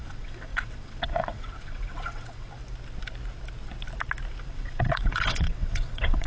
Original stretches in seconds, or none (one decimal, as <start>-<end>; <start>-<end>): 2.6-4.4